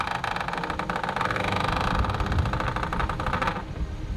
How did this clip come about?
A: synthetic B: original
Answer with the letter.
B